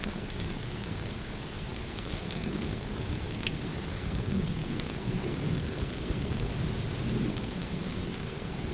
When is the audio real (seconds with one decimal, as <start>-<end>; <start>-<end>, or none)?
6.5-7.3